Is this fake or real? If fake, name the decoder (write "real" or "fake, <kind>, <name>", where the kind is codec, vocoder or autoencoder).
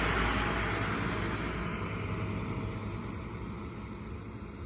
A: real